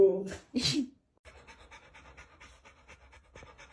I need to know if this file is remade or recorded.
recorded